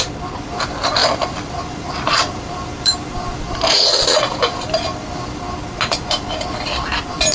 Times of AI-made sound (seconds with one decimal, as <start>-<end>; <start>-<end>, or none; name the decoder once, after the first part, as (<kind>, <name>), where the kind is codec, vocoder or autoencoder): 1.0-5.4 (vocoder, BigVGAN v2)